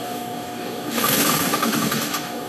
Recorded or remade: remade